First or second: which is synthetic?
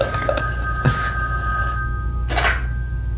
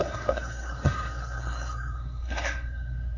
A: second